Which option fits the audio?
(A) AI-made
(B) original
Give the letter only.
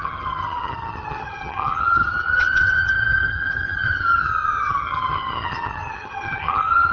A